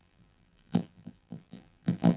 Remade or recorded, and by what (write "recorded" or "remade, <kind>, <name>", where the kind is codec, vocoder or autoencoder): remade, vocoder, BigVGAN v2